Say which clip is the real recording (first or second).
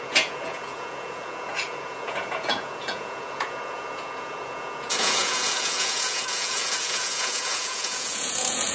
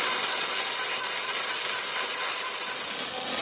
second